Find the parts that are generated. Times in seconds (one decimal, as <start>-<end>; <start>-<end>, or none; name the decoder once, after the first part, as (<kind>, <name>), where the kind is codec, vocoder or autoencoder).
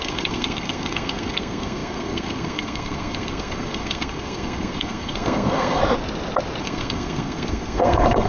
0.0-5.8 (codec, SNAC); 6.6-8.3